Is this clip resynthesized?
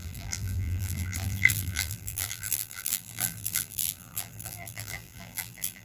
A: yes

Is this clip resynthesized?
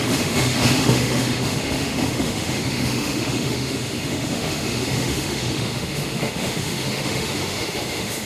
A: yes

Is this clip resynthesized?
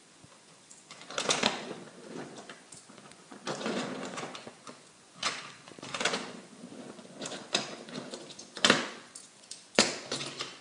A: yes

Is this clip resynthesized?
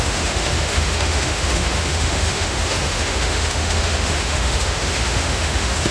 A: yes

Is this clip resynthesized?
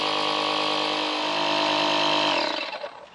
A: no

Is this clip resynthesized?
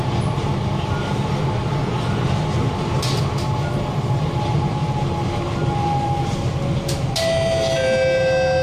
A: no